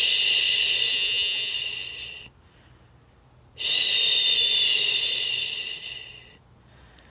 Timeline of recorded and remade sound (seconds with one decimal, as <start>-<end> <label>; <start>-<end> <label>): 0.0-0.9 recorded; 0.9-1.5 remade; 1.5-7.1 recorded